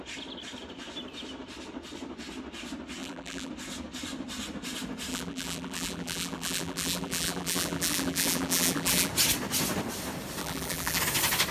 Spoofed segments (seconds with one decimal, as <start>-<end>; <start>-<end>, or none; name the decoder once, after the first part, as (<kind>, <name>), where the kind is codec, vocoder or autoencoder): 3.0-3.5 (vocoder, BigVGAN v2); 5.1-9.1; 10.4-11.0